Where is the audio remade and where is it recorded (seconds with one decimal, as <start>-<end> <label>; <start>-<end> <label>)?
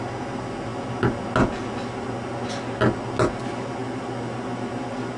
0.0-5.2 recorded